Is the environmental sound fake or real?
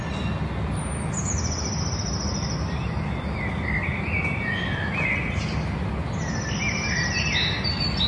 real